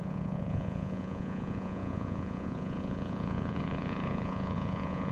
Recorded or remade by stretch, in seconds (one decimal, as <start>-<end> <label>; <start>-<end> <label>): 0.0-5.1 remade